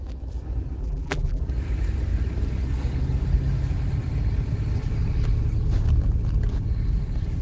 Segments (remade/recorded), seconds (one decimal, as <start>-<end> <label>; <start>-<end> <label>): 0.0-0.8 recorded; 0.8-1.4 remade; 1.4-7.4 recorded